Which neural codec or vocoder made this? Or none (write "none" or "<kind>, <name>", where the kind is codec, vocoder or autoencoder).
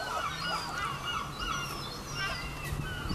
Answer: none